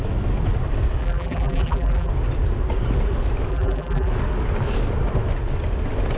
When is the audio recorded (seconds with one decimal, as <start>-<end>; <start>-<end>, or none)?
0.0-1.0; 2.1-3.5; 4.1-6.2